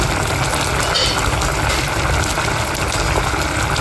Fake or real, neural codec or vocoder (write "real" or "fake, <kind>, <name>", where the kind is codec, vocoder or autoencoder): real